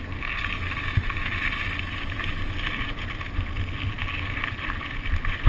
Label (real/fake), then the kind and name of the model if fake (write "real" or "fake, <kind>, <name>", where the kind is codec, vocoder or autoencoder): real